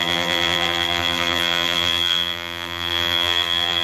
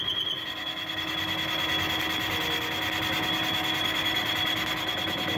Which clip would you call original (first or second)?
second